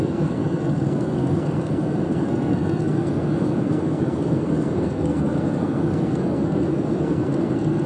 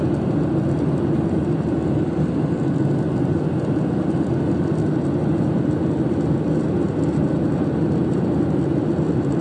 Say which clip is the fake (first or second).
first